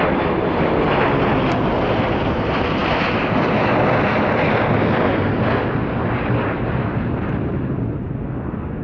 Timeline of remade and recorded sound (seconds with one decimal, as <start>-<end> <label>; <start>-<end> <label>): 0.0-8.8 recorded